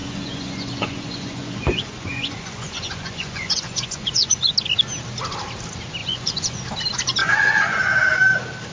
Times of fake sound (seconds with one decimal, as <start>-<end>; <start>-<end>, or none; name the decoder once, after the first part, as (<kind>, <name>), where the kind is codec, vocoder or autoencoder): 0.0-4.5 (vocoder, Vocos); 6.0-6.6; 7.2-7.8

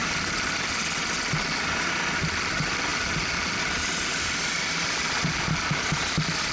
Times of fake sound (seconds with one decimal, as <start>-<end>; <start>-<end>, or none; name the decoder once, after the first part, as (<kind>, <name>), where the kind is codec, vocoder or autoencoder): none

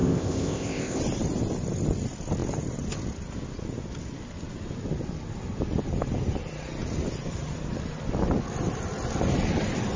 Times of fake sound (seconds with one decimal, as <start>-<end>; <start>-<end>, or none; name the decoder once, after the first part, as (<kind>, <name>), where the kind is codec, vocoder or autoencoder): 0.0-1.0 (codec, ZipCodec)

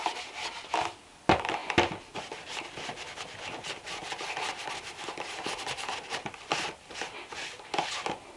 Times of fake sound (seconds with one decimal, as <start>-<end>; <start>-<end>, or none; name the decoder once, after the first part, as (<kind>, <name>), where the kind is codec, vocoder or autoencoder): none